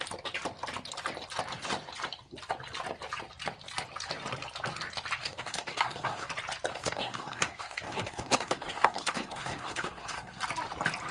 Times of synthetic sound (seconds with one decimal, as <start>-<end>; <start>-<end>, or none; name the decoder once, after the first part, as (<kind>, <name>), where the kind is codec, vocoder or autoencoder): 5.2-6.3 (codec, SNAC); 6.7-10.4